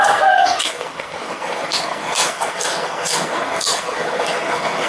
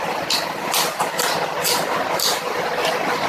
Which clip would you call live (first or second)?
second